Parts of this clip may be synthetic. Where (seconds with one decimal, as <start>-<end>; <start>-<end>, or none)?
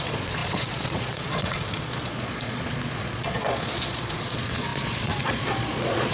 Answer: 0.0-6.1